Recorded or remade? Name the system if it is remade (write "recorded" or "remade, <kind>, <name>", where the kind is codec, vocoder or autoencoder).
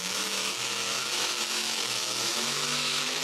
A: remade, autoencoder, DAC-VAE